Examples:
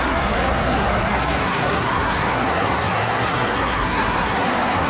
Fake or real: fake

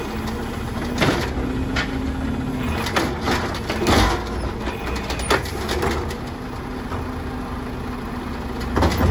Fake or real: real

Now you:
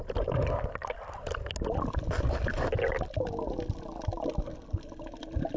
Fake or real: real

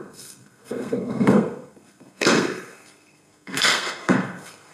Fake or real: fake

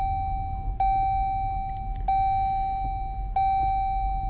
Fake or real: real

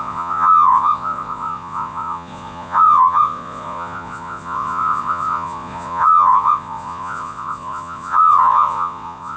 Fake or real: fake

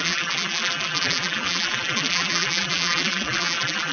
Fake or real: fake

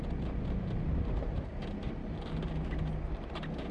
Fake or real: real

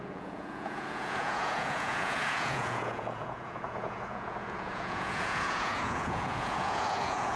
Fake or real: fake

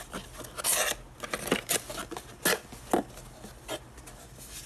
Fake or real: real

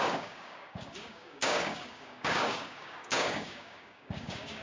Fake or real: fake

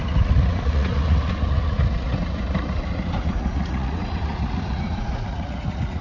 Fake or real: fake